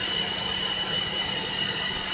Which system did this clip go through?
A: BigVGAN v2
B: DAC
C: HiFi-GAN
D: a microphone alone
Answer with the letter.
D